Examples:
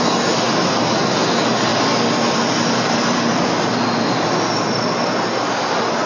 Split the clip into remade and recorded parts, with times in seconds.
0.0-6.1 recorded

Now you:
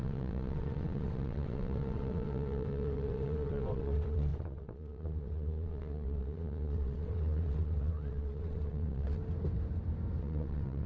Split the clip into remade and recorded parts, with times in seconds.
0.0-9.2 remade; 9.2-10.2 recorded; 10.2-10.9 remade

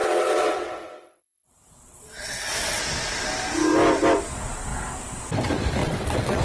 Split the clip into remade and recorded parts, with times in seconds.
0.0-2.8 remade; 2.8-5.8 recorded; 5.8-6.4 remade

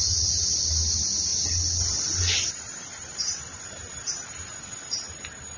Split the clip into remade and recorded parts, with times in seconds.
0.0-5.6 recorded